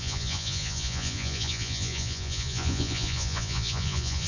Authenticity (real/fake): fake